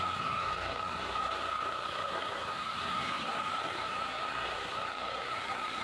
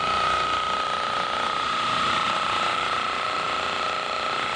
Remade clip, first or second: first